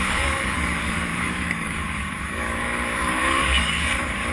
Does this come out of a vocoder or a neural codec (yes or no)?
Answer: yes